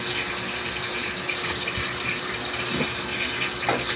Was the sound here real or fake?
real